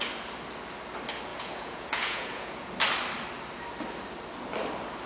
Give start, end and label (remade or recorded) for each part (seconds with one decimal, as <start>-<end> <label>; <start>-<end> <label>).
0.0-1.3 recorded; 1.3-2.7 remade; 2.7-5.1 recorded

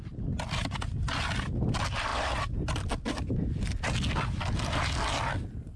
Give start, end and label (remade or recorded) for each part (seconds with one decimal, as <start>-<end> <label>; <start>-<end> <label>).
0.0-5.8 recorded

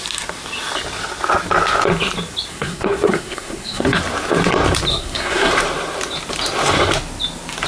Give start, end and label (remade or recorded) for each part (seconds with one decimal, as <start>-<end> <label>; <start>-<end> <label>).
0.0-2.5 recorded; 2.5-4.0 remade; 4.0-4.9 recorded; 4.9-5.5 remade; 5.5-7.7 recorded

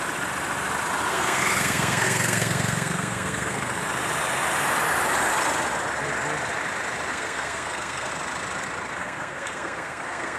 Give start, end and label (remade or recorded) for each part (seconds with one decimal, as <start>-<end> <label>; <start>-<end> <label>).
0.0-1.1 recorded; 1.1-3.8 remade; 3.8-7.1 recorded; 7.1-8.1 remade; 8.1-9.0 recorded; 9.0-10.4 remade

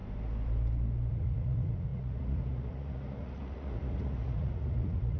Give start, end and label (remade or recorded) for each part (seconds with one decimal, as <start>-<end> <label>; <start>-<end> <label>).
0.0-1.1 recorded; 1.1-5.2 remade